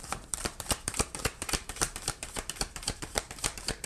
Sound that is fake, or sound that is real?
fake